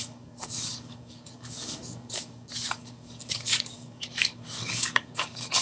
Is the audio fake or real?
fake